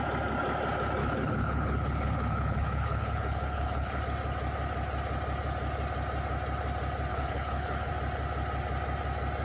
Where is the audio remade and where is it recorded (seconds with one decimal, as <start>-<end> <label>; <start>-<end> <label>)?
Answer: 0.0-1.0 recorded; 1.0-4.0 remade; 4.0-7.1 recorded; 7.1-7.9 remade; 7.9-9.4 recorded